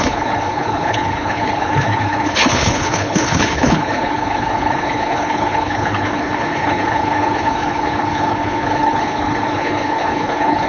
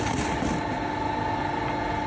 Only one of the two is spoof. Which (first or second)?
first